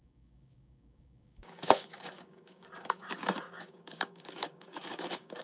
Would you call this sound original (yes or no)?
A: no